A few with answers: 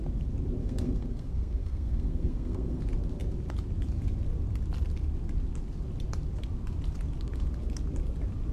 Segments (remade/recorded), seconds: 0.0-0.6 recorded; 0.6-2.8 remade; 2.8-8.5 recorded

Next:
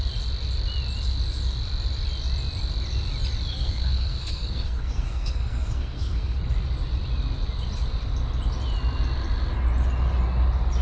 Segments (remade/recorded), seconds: 0.0-3.5 recorded; 3.5-6.4 remade; 6.4-10.8 recorded

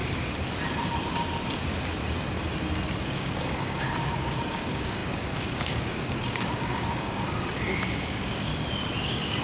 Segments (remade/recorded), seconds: 0.0-3.0 recorded; 3.0-8.5 remade; 8.5-9.0 recorded; 9.0-9.4 remade

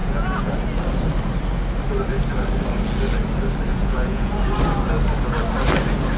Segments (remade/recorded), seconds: 0.0-0.5 remade; 0.5-3.7 recorded; 3.7-4.3 remade; 4.3-6.2 recorded